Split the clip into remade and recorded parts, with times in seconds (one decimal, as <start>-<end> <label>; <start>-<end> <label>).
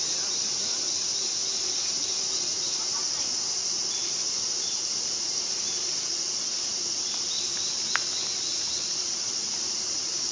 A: 0.0-2.5 recorded; 2.5-6.3 remade; 6.3-8.5 recorded; 8.5-10.3 remade